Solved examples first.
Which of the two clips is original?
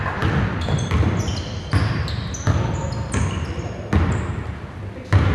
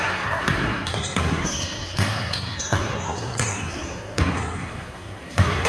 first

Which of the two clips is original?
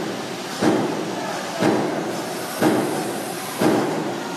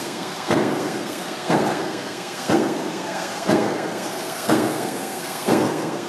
first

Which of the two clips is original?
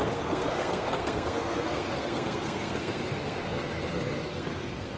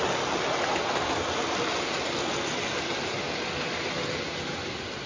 second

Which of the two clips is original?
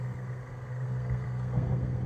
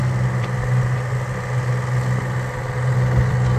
second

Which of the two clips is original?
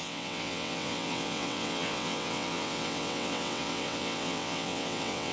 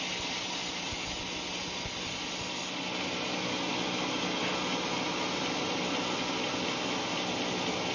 second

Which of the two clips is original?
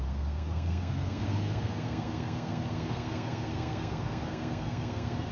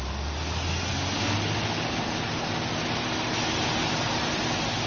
second